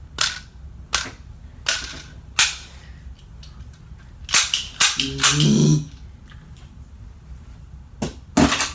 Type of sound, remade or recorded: recorded